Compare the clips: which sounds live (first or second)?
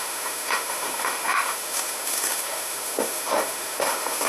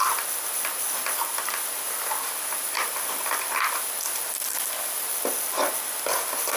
second